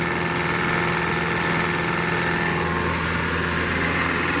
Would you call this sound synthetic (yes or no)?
no